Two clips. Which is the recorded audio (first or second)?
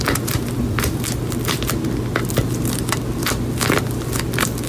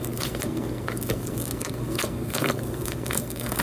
first